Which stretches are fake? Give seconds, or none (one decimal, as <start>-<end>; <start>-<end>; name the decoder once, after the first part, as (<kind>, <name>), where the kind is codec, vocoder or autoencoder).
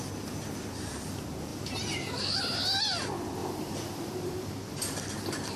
1.5-2.4 (vocoder, BigVGAN v2); 3.4-4.8